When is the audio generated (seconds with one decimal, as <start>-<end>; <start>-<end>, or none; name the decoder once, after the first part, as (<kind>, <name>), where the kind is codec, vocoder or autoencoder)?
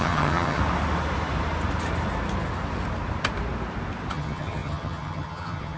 0.0-0.6 (vocoder, HiFi-GAN); 4.1-5.8